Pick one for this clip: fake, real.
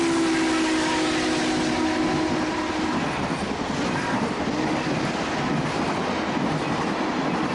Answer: real